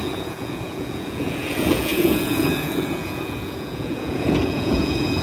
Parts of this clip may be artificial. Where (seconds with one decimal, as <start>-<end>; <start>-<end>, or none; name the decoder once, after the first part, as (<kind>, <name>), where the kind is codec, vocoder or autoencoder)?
0.0-5.2 (vocoder, Vocos)